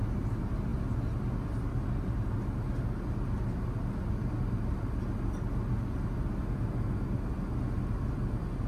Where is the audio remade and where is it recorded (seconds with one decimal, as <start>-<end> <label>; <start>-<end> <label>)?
0.0-8.7 recorded